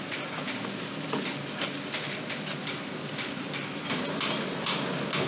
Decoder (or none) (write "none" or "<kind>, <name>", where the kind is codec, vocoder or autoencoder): none